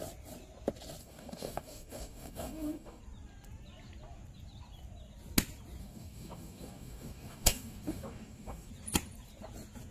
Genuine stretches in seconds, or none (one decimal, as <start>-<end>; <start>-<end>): 0.0-1.0; 3.0-5.8; 8.7-9.9